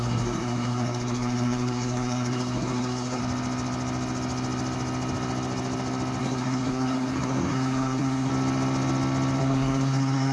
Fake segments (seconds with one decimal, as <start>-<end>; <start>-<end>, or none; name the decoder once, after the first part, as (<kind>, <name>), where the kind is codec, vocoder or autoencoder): 0.0-3.2 (codec, SNAC); 6.2-8.3; 9.4-10.3